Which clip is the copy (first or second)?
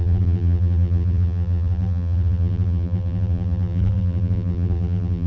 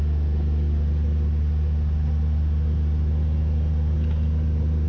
first